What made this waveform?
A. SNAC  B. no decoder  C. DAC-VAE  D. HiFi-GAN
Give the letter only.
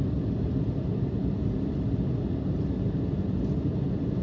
B